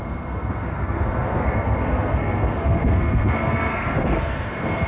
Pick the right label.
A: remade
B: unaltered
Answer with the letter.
A